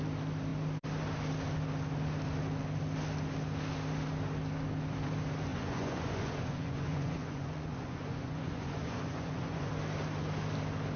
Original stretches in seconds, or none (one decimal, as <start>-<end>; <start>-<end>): 0.0-5.5; 9.7-11.0